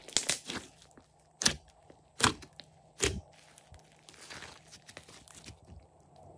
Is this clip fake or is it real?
real